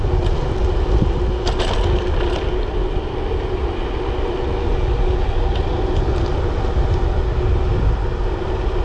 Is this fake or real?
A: real